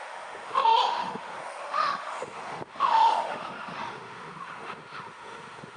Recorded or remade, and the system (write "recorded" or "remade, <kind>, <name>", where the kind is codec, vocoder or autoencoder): remade, autoencoder, DAC-VAE